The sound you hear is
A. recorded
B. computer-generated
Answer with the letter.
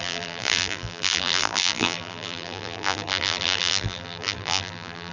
B